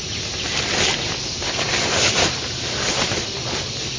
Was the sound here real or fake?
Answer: real